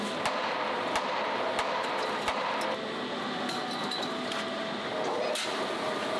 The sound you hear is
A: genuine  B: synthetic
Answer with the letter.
A